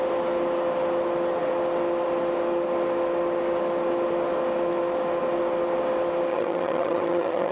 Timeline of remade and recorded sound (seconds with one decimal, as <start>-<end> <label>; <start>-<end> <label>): 0.0-6.3 recorded; 6.3-7.5 remade